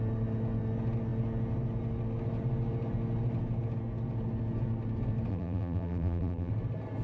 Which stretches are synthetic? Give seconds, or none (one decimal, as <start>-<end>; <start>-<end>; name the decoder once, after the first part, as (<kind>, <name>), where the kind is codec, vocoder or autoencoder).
5.3-6.5 (vocoder, BigVGAN v2)